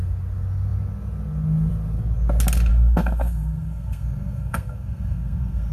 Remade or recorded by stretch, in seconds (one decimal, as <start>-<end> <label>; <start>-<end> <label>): 0.0-2.7 recorded; 2.7-5.7 remade